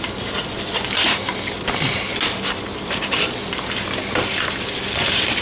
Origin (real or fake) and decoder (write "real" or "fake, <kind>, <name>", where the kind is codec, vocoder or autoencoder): real